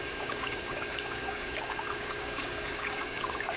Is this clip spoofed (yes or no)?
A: yes